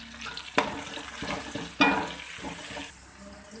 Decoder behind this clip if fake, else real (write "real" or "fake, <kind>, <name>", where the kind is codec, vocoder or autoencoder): real